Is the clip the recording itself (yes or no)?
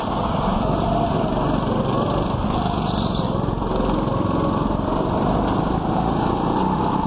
no